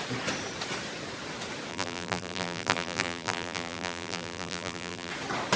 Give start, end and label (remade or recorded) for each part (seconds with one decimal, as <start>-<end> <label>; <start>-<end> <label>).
0.0-1.7 recorded; 1.7-5.1 remade; 5.1-5.6 recorded